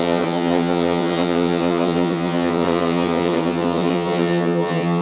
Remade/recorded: remade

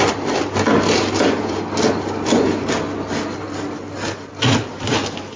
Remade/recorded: recorded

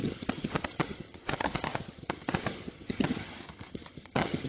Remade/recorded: remade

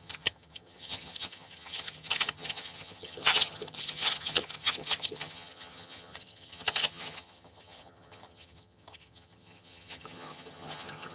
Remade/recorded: remade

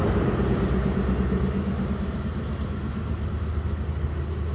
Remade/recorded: recorded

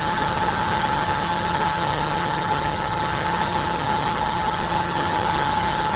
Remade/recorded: remade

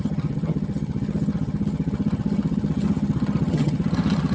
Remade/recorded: remade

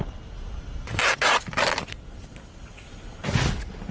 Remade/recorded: recorded